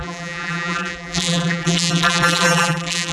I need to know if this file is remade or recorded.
remade